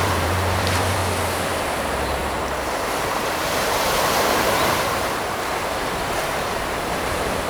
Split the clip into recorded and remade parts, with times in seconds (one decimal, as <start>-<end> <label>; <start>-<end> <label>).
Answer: 0.0-1.0 remade; 1.0-1.8 recorded; 1.8-7.5 remade